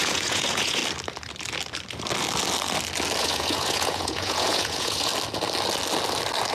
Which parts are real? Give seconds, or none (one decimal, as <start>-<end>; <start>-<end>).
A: 0.8-3.2; 5.1-6.5